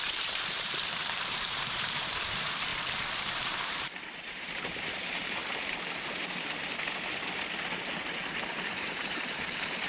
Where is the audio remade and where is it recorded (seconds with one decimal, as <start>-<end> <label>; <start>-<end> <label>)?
0.0-2.7 remade; 2.7-3.3 recorded; 3.3-5.4 remade; 5.4-8.4 recorded; 8.4-9.9 remade